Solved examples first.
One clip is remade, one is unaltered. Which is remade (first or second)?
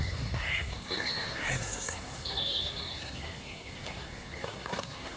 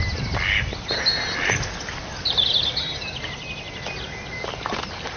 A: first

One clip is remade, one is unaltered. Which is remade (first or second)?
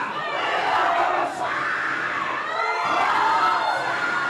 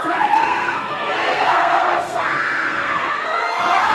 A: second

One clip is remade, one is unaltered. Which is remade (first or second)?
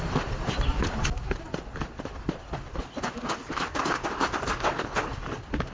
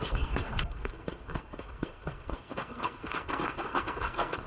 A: second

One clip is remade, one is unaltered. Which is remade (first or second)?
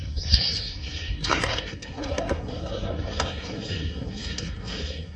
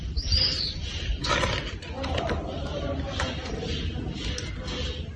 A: first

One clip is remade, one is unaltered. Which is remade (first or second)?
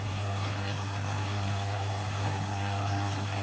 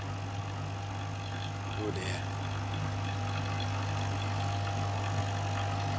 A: first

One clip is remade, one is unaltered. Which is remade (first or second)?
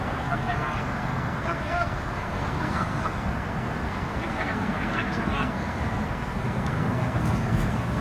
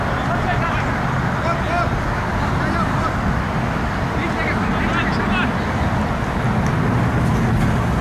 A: first